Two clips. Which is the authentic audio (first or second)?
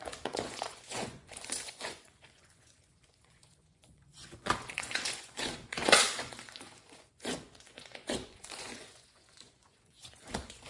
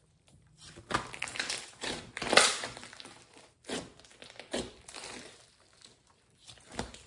second